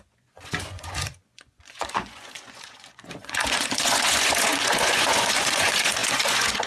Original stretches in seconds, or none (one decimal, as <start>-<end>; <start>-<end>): none